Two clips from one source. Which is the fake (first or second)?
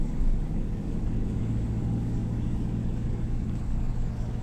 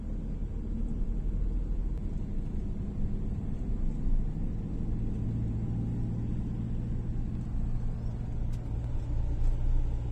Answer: first